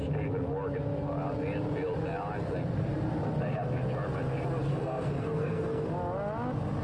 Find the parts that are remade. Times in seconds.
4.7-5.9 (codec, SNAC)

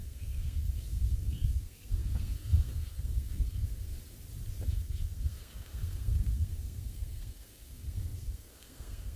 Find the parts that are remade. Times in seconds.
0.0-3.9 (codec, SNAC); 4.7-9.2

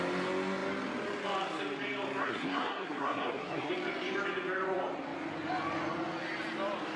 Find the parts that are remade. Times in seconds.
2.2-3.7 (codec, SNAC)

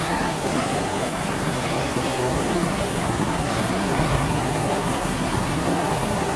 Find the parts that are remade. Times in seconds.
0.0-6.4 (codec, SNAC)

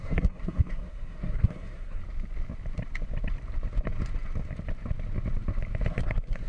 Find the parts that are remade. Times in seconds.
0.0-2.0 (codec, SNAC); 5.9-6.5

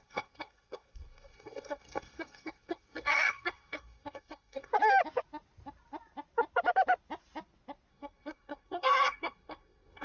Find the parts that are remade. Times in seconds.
0.0-4.7 (codec, SNAC); 7.9-10.0